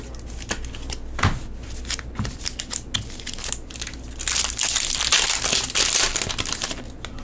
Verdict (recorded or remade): recorded